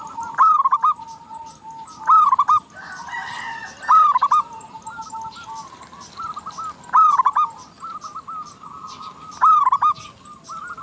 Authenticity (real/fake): real